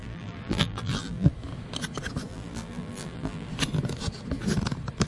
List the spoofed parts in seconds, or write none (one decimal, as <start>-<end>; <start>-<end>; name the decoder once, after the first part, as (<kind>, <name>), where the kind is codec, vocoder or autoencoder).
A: 0.0-1.3 (vocoder, BigVGAN v2); 2.3-3.5